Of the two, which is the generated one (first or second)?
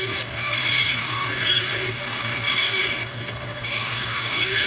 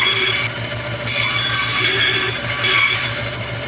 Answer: first